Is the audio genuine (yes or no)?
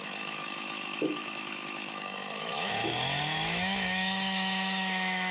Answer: no